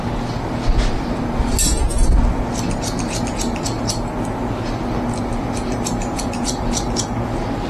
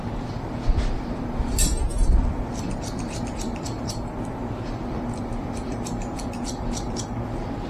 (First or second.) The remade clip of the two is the second